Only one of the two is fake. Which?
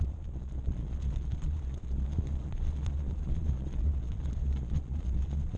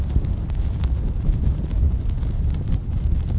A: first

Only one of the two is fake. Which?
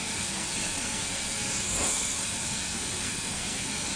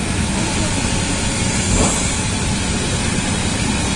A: first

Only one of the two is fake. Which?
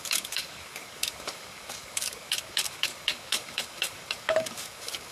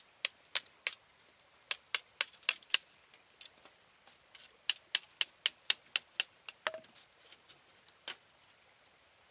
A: first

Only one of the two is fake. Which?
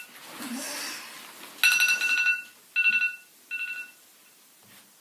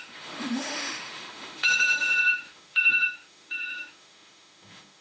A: second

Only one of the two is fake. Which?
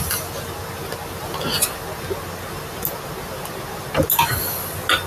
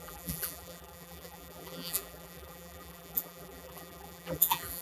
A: second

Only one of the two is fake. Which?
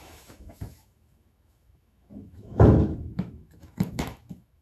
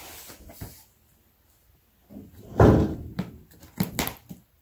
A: first